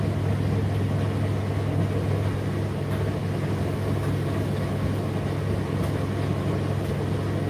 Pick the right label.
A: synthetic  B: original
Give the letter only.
B